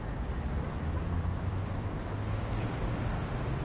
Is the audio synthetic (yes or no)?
yes